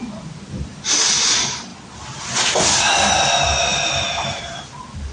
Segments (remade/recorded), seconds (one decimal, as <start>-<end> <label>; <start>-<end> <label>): 0.0-5.1 recorded

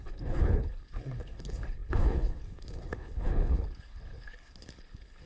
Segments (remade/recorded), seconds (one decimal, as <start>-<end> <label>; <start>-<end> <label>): 0.0-5.3 remade

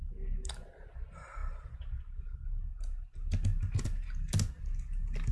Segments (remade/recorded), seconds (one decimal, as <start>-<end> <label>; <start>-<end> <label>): 0.0-5.3 recorded

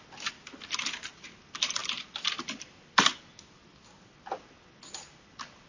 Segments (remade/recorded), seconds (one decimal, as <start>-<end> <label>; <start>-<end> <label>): 0.0-5.7 recorded